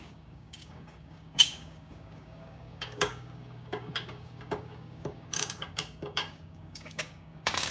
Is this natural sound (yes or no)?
no